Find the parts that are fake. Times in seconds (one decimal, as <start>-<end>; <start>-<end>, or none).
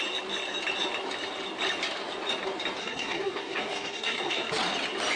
2.8-4.5